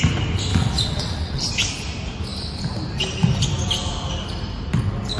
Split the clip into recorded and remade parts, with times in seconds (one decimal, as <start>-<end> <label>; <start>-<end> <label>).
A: 0.0-0.5 recorded; 0.5-1.5 remade; 1.5-5.2 recorded